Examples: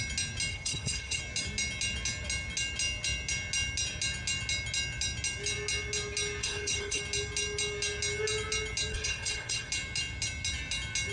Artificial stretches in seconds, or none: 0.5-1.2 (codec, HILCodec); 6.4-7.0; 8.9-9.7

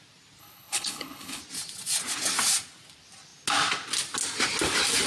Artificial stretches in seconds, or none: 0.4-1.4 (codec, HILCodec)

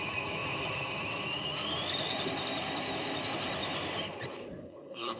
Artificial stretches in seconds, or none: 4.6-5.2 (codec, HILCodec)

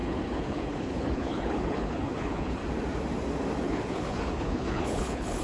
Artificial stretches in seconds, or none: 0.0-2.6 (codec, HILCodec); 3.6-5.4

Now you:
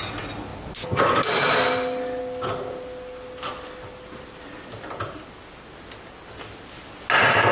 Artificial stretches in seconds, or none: none